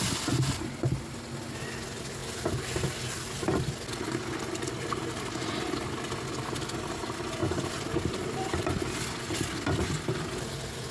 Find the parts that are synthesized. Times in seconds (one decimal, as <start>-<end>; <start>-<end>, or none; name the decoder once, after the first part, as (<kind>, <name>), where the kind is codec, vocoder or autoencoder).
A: none